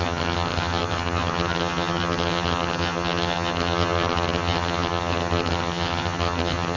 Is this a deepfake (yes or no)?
yes